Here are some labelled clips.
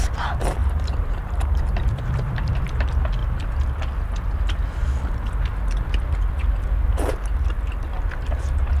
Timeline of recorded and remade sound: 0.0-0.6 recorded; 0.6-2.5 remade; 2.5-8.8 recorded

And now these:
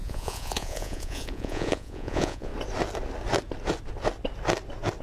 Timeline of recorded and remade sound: 0.0-2.5 remade; 2.5-5.0 recorded

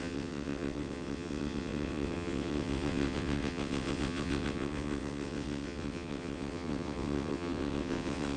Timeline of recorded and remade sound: 0.0-8.4 remade

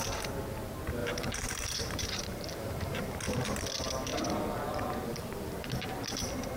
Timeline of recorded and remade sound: 0.0-1.0 recorded; 1.0-3.2 remade; 3.2-5.1 recorded; 5.1-5.7 remade; 5.7-6.6 recorded